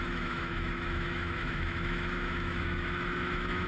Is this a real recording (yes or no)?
no